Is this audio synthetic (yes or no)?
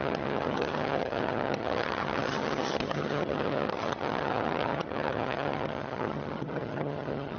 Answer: yes